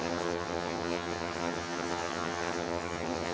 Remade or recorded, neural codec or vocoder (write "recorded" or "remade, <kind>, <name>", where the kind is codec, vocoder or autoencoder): remade, vocoder, HiFi-GAN